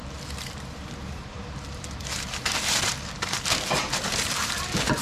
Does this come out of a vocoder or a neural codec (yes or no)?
yes